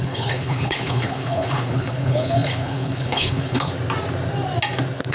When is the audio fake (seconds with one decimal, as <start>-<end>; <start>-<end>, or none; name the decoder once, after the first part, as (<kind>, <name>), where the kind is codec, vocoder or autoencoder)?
0.0-3.7 (codec, HILCodec)